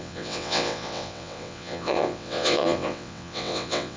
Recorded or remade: remade